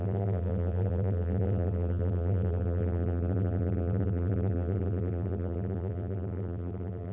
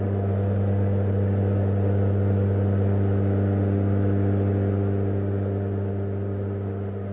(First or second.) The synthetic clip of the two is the first